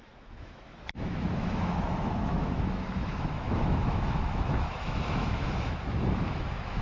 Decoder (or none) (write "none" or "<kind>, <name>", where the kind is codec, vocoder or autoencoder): autoencoder, DAC-VAE